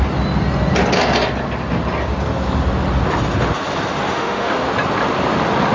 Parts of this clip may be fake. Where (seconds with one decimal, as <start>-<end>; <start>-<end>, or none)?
4.1-4.6